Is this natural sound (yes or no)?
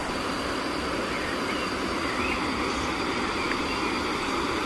yes